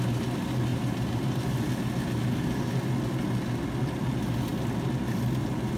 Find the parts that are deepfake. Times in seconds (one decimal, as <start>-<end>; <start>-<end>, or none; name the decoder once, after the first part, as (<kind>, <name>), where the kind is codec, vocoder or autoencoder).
0.7-1.4 (vocoder, BigVGAN v2)